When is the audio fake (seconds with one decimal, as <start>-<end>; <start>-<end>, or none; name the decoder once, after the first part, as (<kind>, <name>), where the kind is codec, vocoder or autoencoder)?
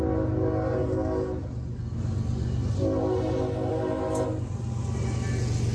none